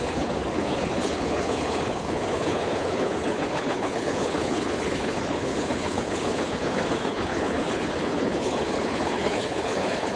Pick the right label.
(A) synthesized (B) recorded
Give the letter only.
A